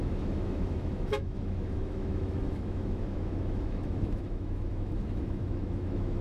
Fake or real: fake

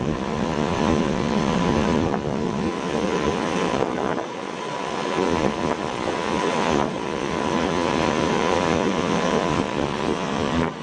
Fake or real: fake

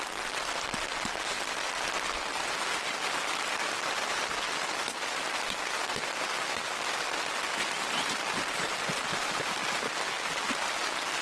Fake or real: real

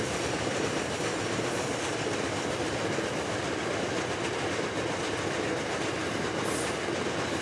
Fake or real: real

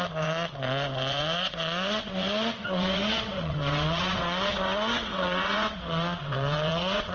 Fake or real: fake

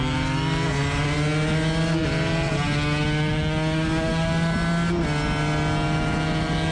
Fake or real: real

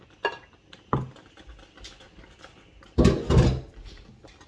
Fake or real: real